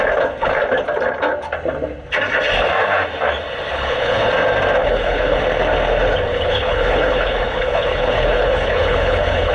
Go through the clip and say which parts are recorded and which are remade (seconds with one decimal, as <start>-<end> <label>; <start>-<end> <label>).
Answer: 0.0-3.7 recorded; 3.7-4.3 remade; 4.3-4.8 recorded; 4.8-5.4 remade; 5.4-6.3 recorded; 6.3-9.5 remade

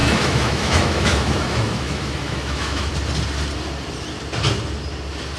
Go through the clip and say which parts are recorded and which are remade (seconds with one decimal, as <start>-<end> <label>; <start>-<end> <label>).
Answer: 0.0-2.9 remade; 2.9-5.4 recorded

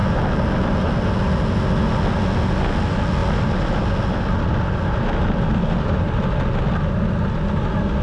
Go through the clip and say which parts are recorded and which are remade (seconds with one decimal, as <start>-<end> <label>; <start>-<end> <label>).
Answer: 0.0-8.0 recorded

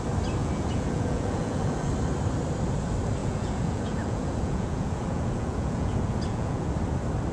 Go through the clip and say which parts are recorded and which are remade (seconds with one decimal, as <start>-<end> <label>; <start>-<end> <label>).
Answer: 0.0-0.4 recorded; 0.4-1.9 remade; 1.9-3.2 recorded; 3.2-6.7 remade; 6.7-7.3 recorded